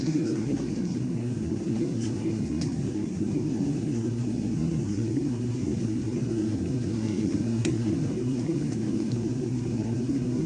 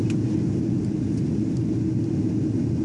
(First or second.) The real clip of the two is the second